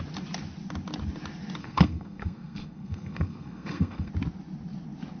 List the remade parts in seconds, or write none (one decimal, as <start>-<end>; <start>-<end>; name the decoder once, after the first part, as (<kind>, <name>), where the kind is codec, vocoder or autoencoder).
1.6-4.1 (codec, SNAC)